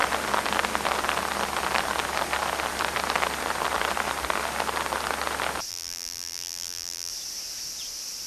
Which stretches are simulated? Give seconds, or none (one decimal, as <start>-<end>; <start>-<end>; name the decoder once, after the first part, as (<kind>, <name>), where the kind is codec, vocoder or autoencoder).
5.7-7.1 (vocoder, BigVGAN v2)